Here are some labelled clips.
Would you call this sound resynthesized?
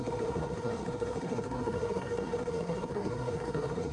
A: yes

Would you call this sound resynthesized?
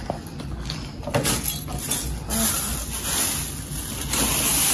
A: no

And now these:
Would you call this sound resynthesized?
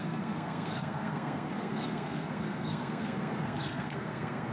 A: yes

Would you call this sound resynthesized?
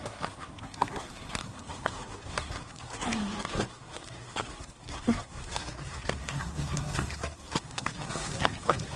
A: yes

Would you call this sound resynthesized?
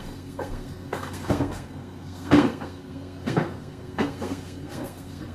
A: yes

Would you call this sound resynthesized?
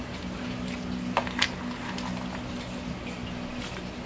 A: no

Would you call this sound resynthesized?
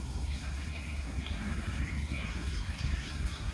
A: yes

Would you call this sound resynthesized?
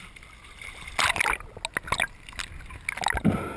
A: no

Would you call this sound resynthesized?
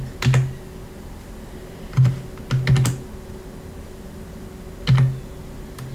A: no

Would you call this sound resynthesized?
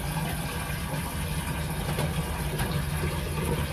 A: no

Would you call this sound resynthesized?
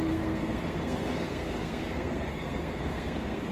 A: yes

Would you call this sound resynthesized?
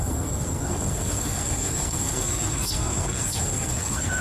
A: yes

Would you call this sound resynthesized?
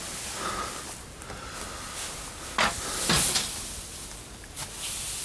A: no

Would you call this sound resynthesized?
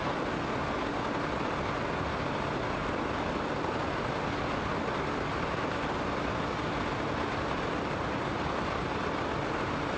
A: no